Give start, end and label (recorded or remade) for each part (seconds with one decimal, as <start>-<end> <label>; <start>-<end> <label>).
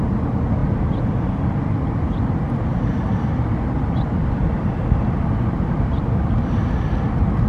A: 0.0-0.6 recorded; 0.6-5.0 remade; 5.0-7.5 recorded